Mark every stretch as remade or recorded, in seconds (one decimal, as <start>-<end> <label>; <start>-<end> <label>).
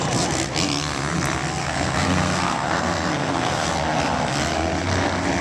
0.0-1.6 recorded; 1.6-3.7 remade; 3.7-5.4 recorded